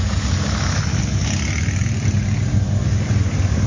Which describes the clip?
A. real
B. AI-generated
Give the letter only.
A